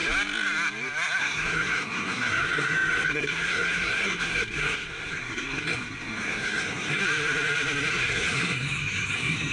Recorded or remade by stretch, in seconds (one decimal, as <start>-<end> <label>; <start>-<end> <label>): 0.0-1.2 recorded; 1.2-7.0 remade; 7.0-7.9 recorded; 7.9-9.5 remade